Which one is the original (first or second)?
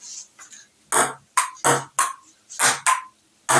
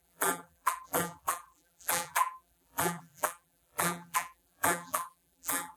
first